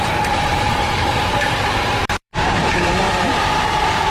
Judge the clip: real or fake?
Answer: fake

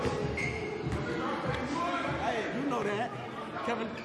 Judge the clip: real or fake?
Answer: real